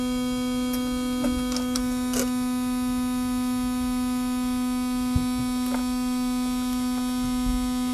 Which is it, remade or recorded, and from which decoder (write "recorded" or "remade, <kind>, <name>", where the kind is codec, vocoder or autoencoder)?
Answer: recorded